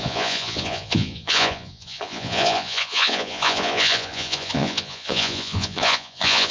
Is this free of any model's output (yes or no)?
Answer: no